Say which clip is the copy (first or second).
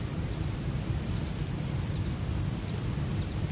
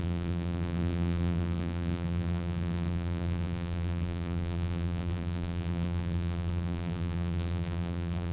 second